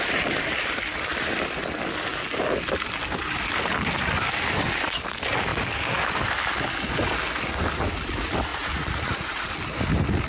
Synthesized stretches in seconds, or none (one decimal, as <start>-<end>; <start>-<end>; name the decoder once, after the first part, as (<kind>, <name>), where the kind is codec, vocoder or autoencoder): 8.5-9.5 (vocoder, Vocos)